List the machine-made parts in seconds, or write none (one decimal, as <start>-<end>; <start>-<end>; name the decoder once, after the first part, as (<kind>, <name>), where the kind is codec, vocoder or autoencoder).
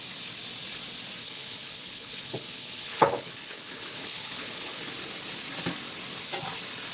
1.2-4.9 (codec, HILCodec)